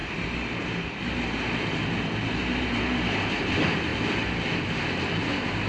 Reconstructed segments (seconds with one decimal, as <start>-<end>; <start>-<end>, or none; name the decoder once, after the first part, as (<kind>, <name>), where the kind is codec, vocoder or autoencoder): 0.0-3.9 (vocoder, BigVGAN v2)

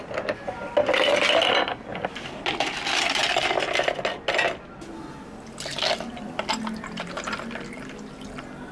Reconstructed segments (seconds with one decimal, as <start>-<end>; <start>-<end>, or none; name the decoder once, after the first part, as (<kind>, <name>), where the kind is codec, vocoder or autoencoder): 1.9-2.6 (vocoder, BigVGAN v2)

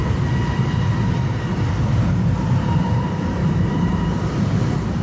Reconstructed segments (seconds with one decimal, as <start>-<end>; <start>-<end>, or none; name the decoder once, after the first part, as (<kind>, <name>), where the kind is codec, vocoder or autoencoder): 1.0-1.5 (vocoder, BigVGAN v2); 2.1-5.0